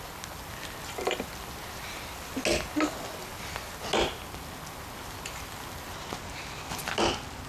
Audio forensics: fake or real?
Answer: real